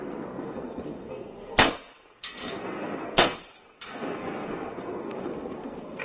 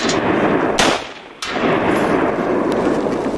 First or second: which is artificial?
first